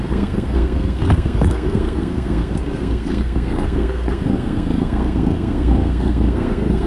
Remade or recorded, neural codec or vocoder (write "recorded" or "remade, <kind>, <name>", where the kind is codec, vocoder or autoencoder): remade, codec, SNAC